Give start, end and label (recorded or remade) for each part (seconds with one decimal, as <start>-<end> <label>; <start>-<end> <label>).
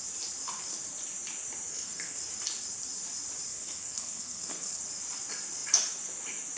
0.0-1.7 recorded; 1.7-2.2 remade; 2.2-3.5 recorded; 3.5-4.8 remade; 4.8-6.6 recorded